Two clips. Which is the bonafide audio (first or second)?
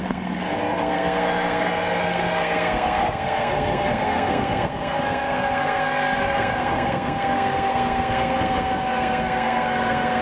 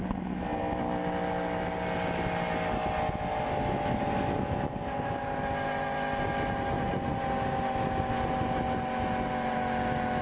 second